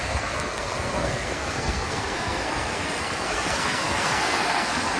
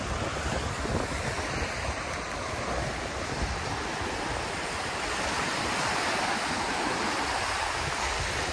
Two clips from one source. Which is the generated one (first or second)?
first